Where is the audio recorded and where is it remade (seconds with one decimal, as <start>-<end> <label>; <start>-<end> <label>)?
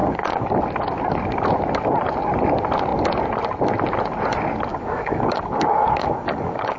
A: 0.0-0.6 remade; 0.6-4.7 recorded; 4.7-6.8 remade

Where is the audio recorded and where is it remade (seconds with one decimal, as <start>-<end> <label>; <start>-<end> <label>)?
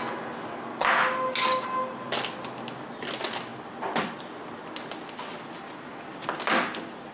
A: 0.0-7.1 recorded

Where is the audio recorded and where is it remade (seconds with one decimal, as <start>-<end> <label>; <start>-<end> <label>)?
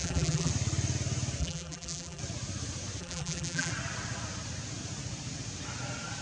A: 0.0-0.5 remade; 0.5-1.4 recorded; 1.4-2.2 remade; 2.2-3.0 recorded; 3.0-3.7 remade; 3.7-6.2 recorded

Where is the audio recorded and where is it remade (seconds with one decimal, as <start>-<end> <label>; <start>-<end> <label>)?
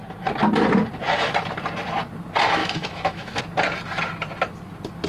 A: 0.0-2.6 recorded; 2.6-3.4 remade; 3.4-5.1 recorded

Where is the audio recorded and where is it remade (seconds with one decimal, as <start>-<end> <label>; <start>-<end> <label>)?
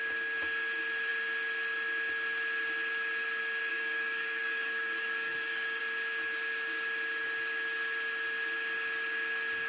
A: 0.0-3.7 recorded; 3.7-5.8 remade; 5.8-9.7 recorded